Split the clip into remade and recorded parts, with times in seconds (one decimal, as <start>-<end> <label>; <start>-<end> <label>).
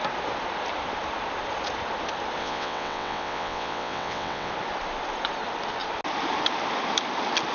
0.0-2.4 recorded; 2.4-4.5 remade; 4.5-7.5 recorded